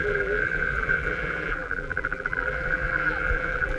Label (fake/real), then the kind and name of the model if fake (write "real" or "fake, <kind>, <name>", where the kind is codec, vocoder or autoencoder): fake, vocoder, BigVGAN v2